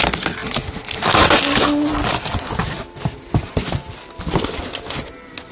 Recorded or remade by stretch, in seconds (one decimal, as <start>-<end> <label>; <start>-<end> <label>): 0.0-5.5 recorded